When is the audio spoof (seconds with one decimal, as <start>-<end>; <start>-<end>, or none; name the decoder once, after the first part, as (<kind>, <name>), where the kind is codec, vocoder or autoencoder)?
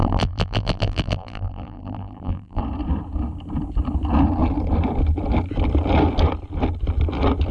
0.0-2.6 (vocoder, BigVGAN v2)